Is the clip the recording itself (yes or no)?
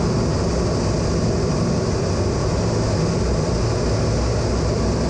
yes